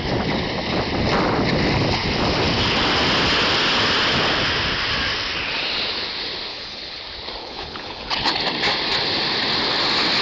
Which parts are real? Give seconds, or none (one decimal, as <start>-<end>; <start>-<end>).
0.0-6.5; 7.0-7.4; 8.4-10.2